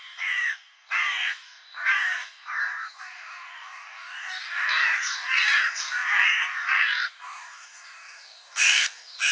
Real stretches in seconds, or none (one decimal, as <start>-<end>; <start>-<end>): none